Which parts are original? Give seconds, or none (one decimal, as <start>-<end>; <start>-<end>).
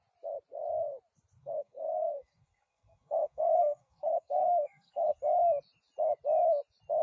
0.0-1.4; 5.2-7.0